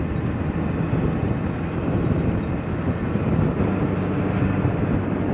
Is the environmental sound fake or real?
real